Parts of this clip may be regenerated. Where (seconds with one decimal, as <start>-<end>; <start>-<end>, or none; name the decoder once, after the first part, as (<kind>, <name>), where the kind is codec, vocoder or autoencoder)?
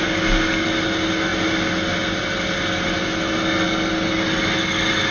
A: none